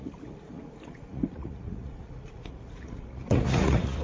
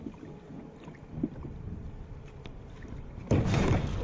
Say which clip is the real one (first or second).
second